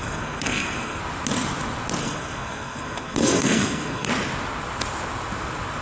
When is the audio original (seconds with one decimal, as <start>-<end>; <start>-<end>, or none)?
1.0-2.0; 4.1-5.8